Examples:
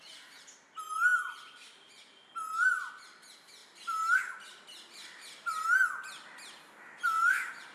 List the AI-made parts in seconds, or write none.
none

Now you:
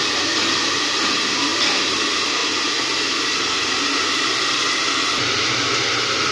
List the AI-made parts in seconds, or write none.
none

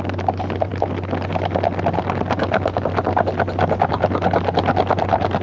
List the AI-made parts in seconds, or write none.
none

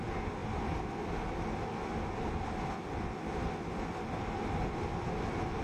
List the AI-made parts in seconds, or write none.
none

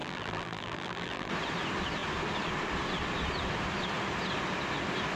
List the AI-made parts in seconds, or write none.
0.0-1.3

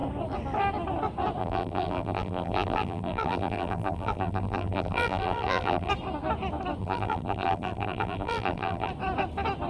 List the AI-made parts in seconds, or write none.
1.4-5.9; 6.8-8.9